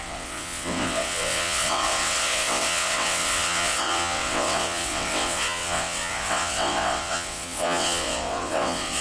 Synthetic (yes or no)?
yes